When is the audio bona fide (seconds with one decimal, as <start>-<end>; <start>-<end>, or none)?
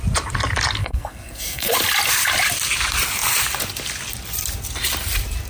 0.0-0.8; 1.7-5.5